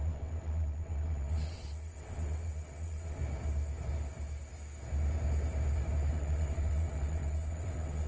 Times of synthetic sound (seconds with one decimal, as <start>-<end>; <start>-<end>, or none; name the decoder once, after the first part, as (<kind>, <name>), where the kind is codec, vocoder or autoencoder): 0.0-3.2 (vocoder, WaveNeXt); 6.1-8.1